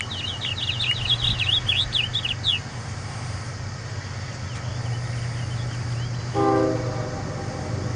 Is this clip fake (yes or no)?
no